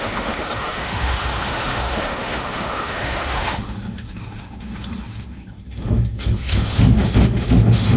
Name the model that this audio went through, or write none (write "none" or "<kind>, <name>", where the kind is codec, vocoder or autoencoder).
autoencoder, DAC-VAE